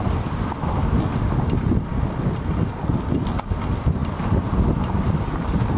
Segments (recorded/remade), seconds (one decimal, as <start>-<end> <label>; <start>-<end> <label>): 0.0-5.8 recorded